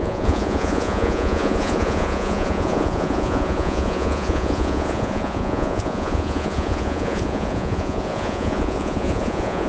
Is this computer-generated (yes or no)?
yes